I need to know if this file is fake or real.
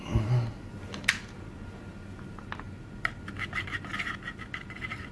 real